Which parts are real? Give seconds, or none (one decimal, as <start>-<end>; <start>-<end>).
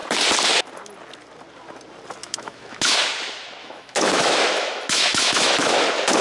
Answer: 0.0-2.2; 3.0-3.6; 5.8-6.2